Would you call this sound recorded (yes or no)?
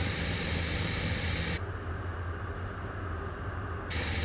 yes